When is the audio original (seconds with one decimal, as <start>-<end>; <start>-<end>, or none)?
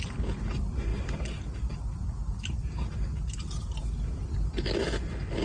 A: 0.0-5.4